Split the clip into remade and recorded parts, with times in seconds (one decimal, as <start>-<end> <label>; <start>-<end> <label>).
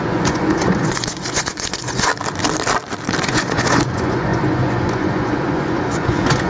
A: 0.0-2.1 remade; 2.1-3.2 recorded; 3.2-6.5 remade